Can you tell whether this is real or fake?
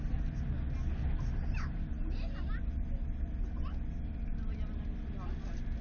real